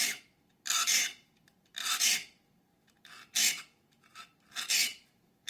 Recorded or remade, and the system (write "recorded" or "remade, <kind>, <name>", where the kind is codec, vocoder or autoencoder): recorded